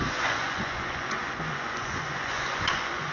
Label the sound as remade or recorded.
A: remade